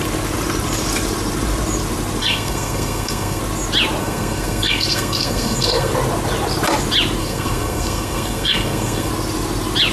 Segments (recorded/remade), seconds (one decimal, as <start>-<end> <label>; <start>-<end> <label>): 0.0-2.2 recorded; 2.2-3.4 remade; 3.4-4.0 recorded; 4.0-5.9 remade; 5.9-7.2 recorded; 7.2-9.1 remade; 9.1-9.9 recorded